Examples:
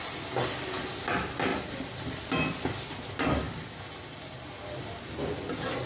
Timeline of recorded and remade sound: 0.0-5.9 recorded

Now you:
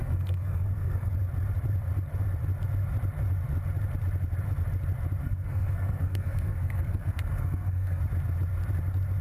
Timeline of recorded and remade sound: 0.0-1.1 remade; 1.1-5.2 recorded; 5.2-8.0 remade; 8.0-9.2 recorded

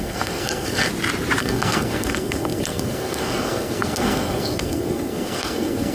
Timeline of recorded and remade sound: 0.0-0.9 remade; 0.9-1.4 recorded; 1.4-5.9 remade

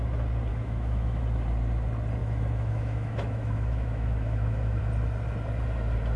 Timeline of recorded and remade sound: 0.0-0.5 recorded; 0.5-1.2 remade; 1.2-2.2 recorded; 2.2-4.8 remade; 4.8-6.2 recorded

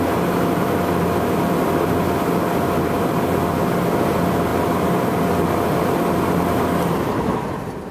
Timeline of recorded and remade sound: 0.0-7.9 recorded

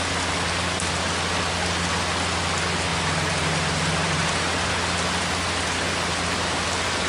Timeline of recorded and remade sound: 0.0-2.9 recorded; 2.9-4.7 remade; 4.7-7.1 recorded

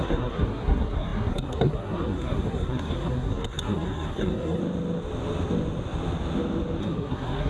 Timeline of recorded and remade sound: 0.0-4.6 remade; 4.6-6.8 recorded; 6.8-7.5 remade